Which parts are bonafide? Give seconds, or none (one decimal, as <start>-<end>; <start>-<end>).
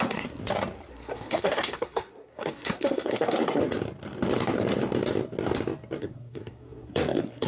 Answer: 0.4-0.9; 3.6-6.0